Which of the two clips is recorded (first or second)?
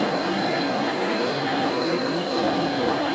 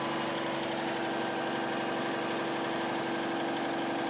second